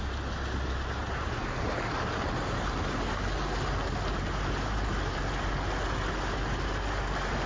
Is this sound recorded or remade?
recorded